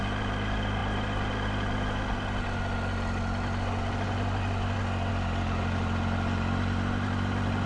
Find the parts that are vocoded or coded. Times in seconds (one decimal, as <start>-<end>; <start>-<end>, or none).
none